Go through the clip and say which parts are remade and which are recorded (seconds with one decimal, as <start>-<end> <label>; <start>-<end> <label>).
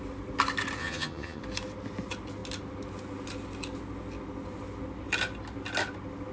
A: 0.0-0.8 recorded; 0.8-1.4 remade; 1.4-6.3 recorded